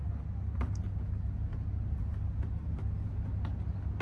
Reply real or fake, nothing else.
real